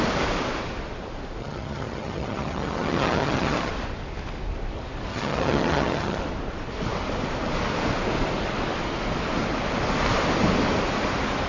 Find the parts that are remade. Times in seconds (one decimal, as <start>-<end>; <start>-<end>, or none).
1.4-3.7; 5.1-6.2